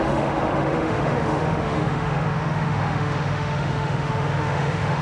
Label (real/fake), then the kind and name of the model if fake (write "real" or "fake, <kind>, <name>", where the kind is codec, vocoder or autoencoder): fake, autoencoder, DAC-VAE